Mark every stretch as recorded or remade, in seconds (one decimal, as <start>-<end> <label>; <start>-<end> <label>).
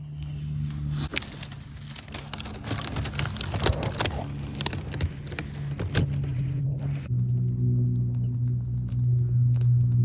0.0-6.3 recorded; 6.3-6.8 remade; 6.8-10.0 recorded